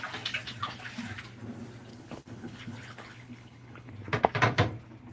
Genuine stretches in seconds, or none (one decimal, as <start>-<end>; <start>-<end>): 0.0-1.9; 3.9-5.1